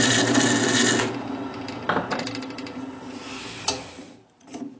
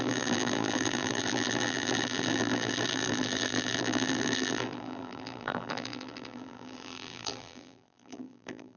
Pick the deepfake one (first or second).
second